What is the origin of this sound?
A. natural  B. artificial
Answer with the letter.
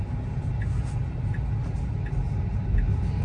A